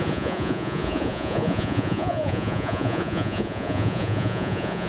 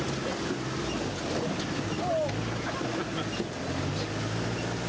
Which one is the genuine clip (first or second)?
second